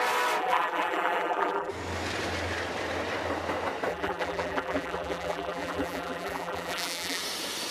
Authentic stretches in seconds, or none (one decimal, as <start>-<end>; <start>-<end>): 0.0-0.4; 1.7-3.9; 7.2-7.7